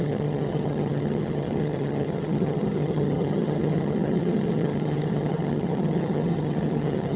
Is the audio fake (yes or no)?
yes